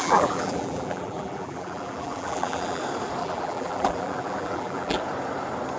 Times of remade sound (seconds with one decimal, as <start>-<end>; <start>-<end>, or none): 0.0-2.8; 3.2-5.0

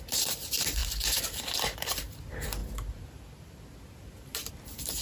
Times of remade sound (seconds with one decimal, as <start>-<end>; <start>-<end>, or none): 0.0-0.8; 2.2-2.6; 4.5-5.0

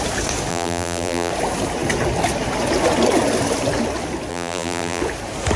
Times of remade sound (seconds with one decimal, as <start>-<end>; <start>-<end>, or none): 0.5-1.3; 4.3-5.0

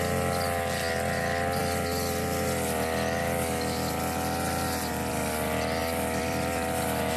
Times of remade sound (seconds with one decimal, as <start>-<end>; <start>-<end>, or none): 5.8-7.2

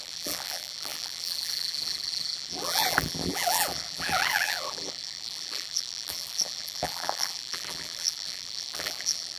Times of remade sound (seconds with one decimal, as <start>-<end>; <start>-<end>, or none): 0.0-9.4

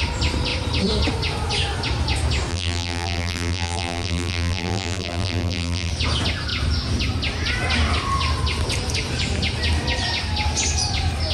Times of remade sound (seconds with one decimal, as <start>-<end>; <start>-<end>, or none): 2.5-5.9

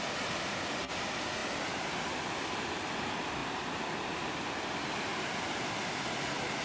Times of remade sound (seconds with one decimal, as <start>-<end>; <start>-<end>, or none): 3.4-4.2; 5.1-6.0

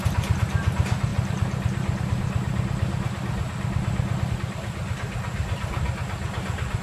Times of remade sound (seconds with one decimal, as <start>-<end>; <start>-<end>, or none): 1.1-4.3